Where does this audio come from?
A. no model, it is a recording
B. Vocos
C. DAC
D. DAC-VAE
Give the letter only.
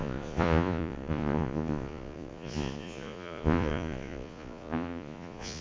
B